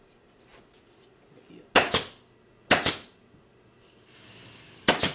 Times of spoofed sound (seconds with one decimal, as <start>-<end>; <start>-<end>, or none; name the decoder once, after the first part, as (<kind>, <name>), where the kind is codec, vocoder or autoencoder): none